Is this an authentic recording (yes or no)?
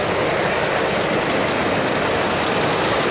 yes